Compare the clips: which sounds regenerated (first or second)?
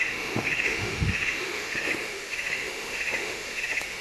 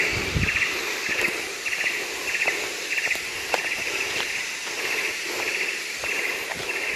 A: first